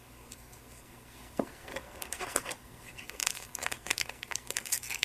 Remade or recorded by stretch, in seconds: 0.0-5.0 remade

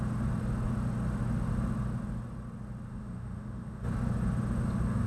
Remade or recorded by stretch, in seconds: 0.0-2.9 recorded; 2.9-3.9 remade; 3.9-5.1 recorded

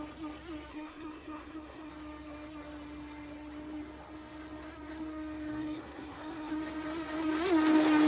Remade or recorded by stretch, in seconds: 0.0-0.7 recorded; 0.7-1.9 remade; 1.9-5.5 recorded; 5.5-6.5 remade; 6.5-8.1 recorded